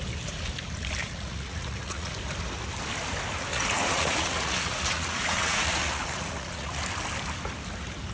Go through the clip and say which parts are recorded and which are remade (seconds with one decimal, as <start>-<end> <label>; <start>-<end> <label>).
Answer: 0.0-1.0 recorded; 1.0-2.1 remade; 2.1-3.5 recorded; 3.5-6.8 remade; 6.8-8.1 recorded